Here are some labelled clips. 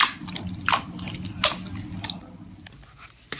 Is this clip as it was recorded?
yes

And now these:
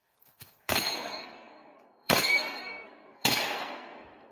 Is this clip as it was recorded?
no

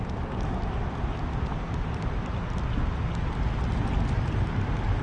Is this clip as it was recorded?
yes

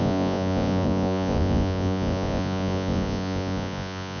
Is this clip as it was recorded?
no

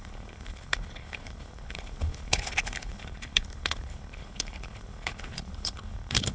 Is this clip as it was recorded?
no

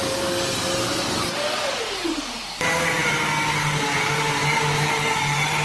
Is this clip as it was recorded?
yes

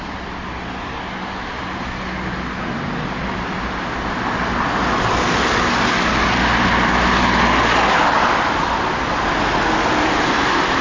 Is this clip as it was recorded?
yes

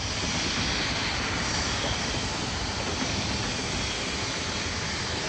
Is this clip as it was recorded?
yes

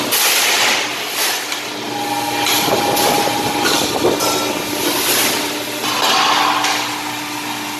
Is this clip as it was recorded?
yes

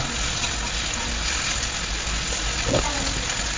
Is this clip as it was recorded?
yes